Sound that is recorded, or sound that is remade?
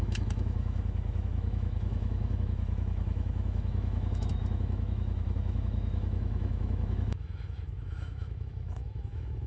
remade